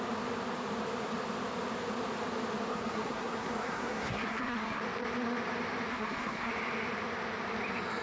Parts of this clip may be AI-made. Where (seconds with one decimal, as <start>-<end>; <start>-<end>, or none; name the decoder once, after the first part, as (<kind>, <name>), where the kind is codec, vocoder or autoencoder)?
2.7-4.8 (codec, SNAC); 5.9-6.5